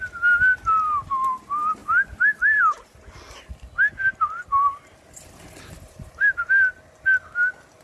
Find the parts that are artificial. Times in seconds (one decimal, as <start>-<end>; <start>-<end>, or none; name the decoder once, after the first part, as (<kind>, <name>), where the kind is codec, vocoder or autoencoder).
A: 1.8-2.6 (vocoder, BigVGAN v2)

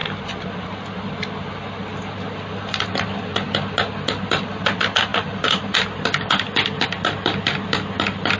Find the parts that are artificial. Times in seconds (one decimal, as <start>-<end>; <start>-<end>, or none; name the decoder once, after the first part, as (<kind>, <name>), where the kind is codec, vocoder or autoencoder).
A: none